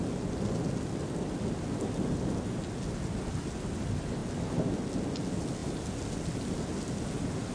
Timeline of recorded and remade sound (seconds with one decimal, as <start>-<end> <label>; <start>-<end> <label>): 0.0-7.5 recorded